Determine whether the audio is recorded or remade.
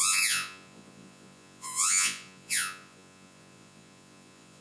remade